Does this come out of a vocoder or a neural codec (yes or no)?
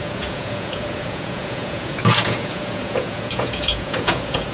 yes